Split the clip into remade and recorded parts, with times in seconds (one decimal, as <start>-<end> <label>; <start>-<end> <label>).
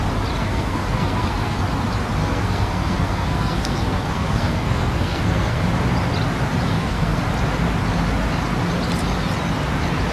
0.0-0.4 recorded; 0.4-1.6 remade; 1.6-2.2 recorded; 2.2-5.6 remade; 5.6-6.7 recorded; 6.7-7.2 remade; 7.2-10.1 recorded